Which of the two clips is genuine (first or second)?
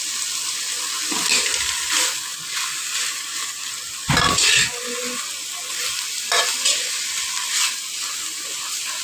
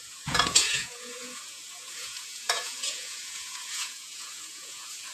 first